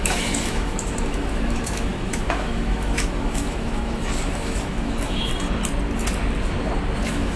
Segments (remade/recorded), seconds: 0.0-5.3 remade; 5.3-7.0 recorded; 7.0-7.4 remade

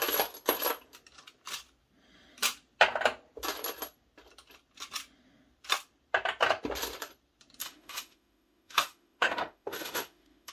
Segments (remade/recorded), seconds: 0.0-7.6 recorded; 7.6-10.5 remade

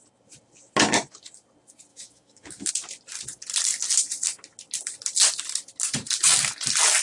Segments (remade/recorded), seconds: 0.0-1.9 recorded; 1.9-2.7 remade; 2.7-7.0 recorded